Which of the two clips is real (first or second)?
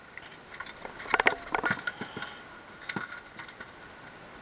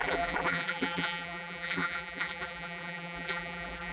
first